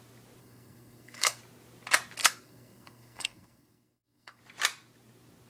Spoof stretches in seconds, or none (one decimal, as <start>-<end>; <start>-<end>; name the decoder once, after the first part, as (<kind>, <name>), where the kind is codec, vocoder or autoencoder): 0.4-1.4 (codec, SNAC); 2.2-4.4